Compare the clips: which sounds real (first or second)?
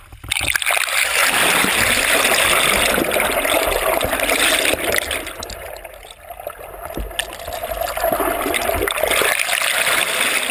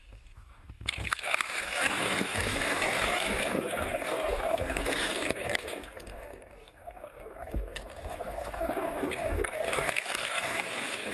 first